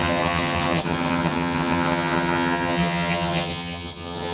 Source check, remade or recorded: remade